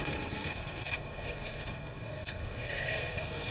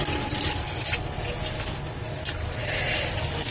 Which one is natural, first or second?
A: second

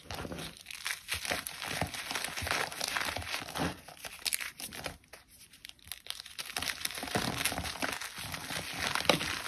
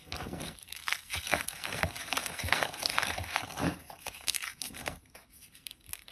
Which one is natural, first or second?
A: first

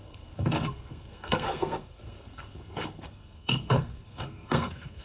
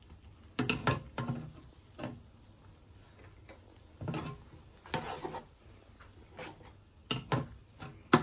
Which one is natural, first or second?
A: second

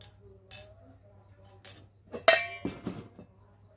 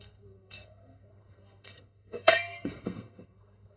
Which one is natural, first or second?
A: first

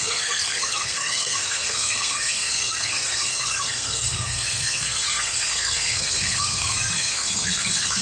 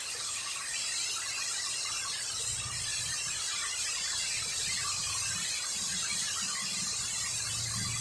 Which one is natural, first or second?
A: second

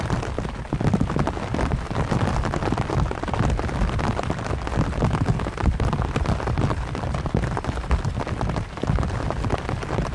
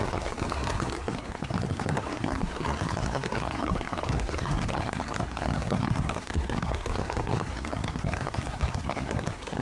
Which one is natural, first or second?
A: first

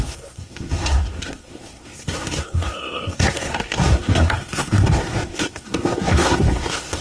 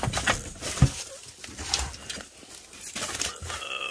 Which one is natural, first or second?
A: second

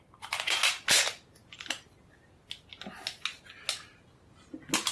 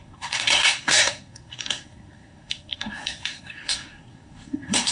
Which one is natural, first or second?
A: first